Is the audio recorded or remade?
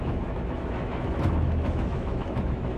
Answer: remade